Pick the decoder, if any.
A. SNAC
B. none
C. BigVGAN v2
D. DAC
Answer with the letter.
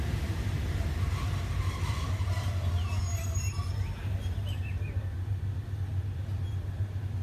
B